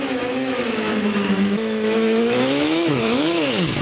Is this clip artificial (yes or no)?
yes